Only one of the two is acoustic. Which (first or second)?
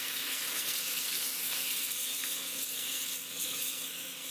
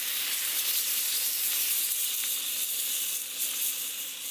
second